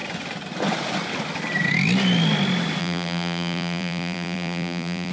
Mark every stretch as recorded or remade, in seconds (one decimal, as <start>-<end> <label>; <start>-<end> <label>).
0.0-2.8 recorded; 2.8-5.1 remade